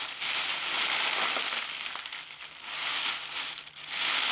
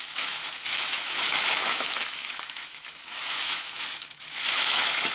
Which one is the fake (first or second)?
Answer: second